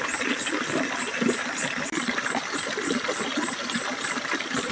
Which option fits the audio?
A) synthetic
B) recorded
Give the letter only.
B